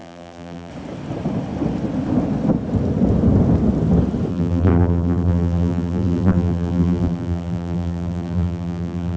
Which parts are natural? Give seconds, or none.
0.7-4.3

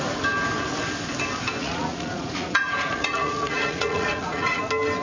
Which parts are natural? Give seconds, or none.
0.0-1.6; 4.6-5.0

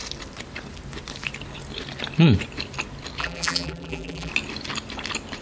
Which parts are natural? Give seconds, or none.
0.0-3.2; 4.3-5.4

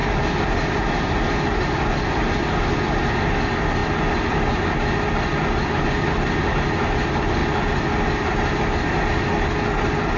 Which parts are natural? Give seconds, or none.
0.0-10.2

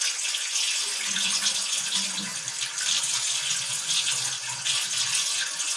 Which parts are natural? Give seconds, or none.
2.3-3.0

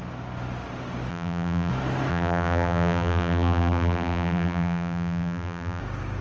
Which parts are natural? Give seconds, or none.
0.0-1.1; 1.7-2.1; 5.8-6.2